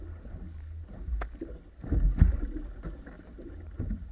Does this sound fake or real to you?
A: real